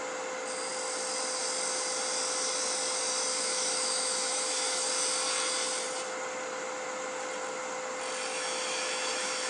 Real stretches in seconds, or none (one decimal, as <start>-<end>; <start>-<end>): 0.0-3.3; 4.9-8.3